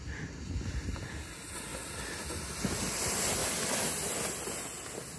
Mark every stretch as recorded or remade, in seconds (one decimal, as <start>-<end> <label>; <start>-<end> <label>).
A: 0.0-5.2 recorded

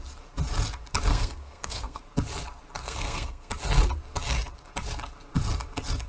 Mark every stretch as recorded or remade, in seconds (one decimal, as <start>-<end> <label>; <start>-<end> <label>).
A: 0.0-1.1 recorded; 1.1-2.0 remade; 2.0-2.8 recorded; 2.8-3.5 remade; 3.5-6.1 recorded